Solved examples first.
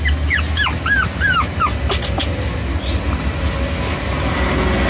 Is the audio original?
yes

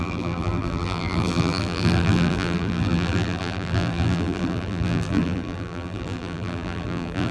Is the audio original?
no